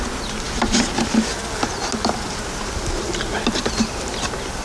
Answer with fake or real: real